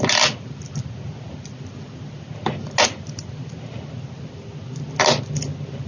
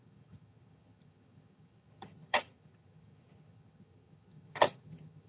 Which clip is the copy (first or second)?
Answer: second